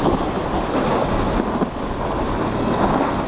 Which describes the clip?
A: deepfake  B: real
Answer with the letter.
B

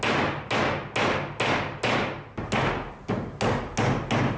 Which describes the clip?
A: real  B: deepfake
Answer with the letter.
A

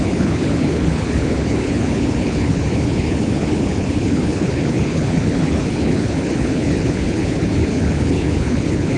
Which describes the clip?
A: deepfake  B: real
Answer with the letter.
A